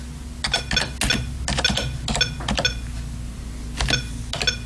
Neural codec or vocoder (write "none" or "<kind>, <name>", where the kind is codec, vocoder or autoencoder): none